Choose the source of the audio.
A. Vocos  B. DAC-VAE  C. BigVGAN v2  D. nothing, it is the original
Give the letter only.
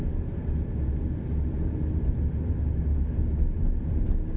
D